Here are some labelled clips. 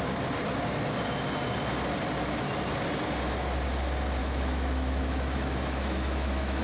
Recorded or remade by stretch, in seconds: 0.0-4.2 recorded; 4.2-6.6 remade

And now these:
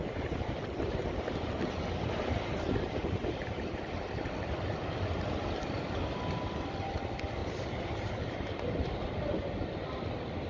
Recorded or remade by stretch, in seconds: 0.0-1.7 remade; 1.7-7.4 recorded; 7.4-8.6 remade; 8.6-10.5 recorded